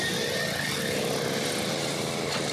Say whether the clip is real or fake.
real